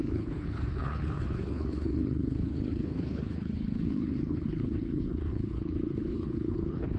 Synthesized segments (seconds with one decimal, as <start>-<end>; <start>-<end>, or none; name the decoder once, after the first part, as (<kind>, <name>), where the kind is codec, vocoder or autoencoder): 0.0-7.0 (codec, HILCodec)